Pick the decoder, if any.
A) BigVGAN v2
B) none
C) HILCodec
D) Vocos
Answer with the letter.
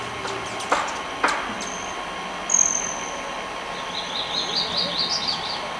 B